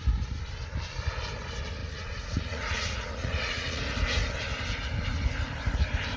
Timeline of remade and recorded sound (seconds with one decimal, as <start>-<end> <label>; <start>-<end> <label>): 0.0-1.8 recorded; 1.8-3.8 remade; 3.8-6.2 recorded